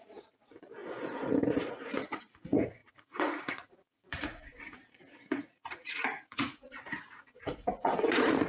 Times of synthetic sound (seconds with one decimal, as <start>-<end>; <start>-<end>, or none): 0.0-8.5